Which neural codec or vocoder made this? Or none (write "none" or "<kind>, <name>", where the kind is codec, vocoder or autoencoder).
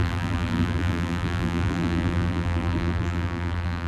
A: vocoder, BigVGAN v2